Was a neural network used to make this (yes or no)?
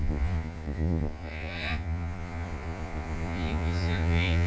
yes